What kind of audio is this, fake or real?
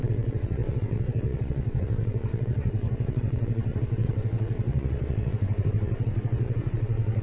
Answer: fake